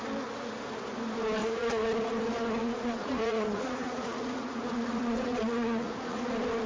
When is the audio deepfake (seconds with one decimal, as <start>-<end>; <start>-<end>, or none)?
1.4-1.9; 2.6-6.3

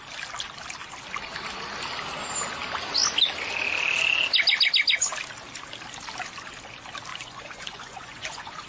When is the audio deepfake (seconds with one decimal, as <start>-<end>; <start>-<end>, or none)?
7.1-8.7